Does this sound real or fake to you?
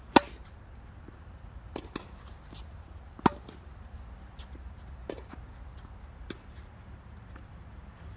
real